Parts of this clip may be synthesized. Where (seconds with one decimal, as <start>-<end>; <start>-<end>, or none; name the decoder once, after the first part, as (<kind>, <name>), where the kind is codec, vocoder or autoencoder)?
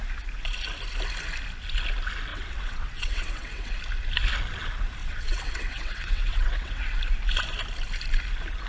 2.3-3.8 (vocoder, WaveNeXt); 5.0-7.0